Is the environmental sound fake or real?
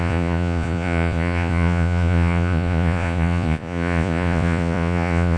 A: fake